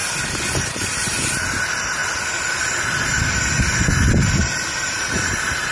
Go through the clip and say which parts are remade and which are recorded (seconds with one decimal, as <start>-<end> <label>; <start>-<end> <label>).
0.0-5.7 recorded